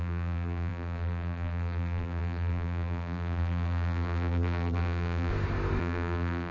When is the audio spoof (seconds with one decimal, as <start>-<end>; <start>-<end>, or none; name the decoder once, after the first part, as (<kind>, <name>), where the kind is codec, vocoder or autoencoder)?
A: 0.0-5.3 (vocoder, BigVGAN v2); 5.8-6.5